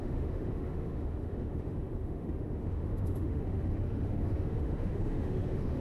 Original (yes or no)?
no